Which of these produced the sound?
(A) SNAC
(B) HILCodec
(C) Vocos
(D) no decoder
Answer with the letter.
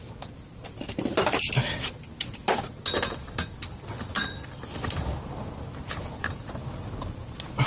D